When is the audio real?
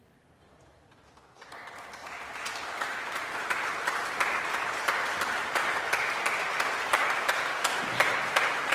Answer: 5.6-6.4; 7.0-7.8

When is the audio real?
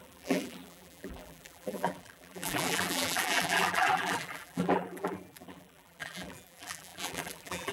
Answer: none